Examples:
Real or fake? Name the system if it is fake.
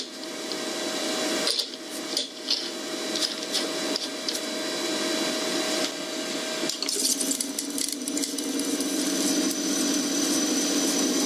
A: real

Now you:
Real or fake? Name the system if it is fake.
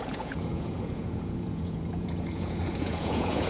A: fake, vocoder, Vocos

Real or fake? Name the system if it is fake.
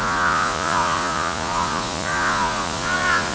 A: fake, vocoder, Vocos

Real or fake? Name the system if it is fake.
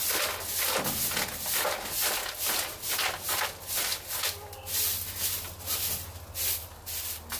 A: real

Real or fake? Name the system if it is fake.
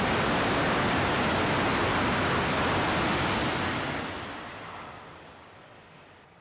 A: real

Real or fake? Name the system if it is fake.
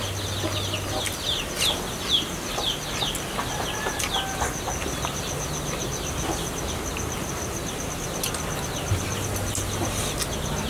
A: real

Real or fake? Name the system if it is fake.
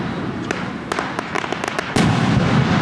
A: real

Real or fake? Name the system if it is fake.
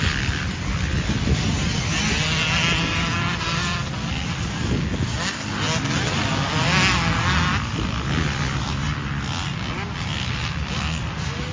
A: real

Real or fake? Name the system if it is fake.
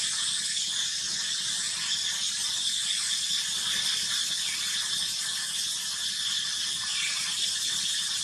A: real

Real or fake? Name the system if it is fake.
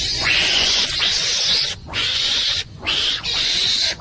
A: fake, vocoder, Vocos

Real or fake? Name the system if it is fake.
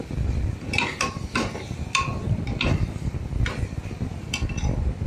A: real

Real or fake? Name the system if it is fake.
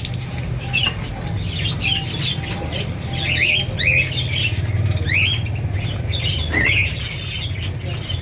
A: real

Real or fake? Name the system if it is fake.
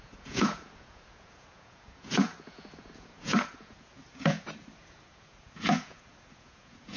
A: fake, vocoder, Vocos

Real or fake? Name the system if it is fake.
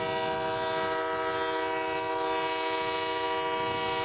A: real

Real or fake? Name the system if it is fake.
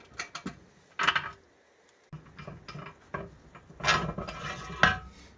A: real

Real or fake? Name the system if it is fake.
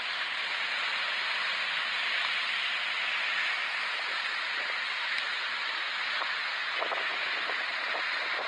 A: real